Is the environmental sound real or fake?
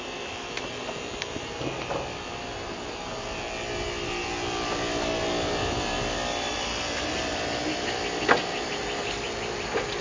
real